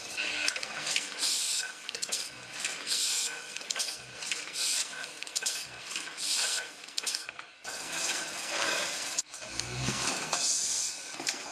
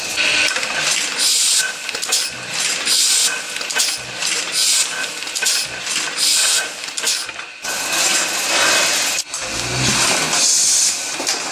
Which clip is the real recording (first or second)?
second